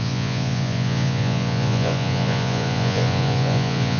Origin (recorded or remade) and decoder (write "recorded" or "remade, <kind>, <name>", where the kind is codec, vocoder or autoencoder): remade, vocoder, Vocos